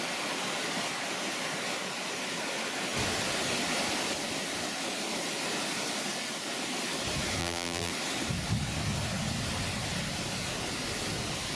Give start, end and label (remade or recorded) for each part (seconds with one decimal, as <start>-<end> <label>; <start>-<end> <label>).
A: 0.0-7.4 recorded; 7.4-7.9 remade; 7.9-11.6 recorded